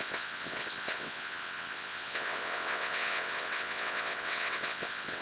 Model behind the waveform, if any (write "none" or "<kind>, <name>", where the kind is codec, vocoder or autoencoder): vocoder, WaveNeXt